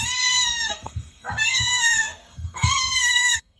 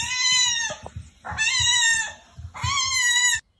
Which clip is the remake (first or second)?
first